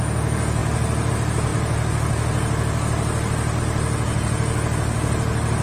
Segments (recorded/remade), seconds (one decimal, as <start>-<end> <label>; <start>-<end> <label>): 0.0-5.6 recorded